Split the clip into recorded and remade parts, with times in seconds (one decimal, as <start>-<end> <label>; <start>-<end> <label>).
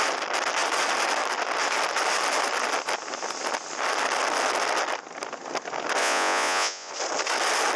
0.0-6.0 recorded; 6.0-6.9 remade; 6.9-7.8 recorded